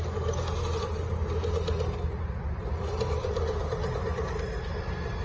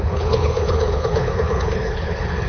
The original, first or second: first